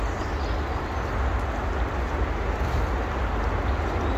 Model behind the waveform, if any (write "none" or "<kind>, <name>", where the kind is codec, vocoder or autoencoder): none